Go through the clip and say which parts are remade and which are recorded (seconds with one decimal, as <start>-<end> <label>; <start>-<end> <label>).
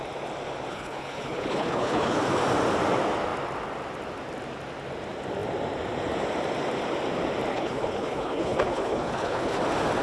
0.0-0.7 recorded; 0.7-2.2 remade; 2.2-7.5 recorded; 7.5-9.6 remade; 9.6-10.0 recorded